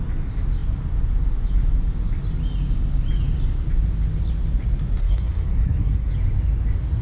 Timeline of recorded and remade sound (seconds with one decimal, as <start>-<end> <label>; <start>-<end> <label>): 0.0-5.0 recorded; 5.0-6.1 remade; 6.1-7.0 recorded